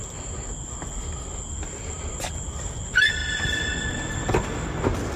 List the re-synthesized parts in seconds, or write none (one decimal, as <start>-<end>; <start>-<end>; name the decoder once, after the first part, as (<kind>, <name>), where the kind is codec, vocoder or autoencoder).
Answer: none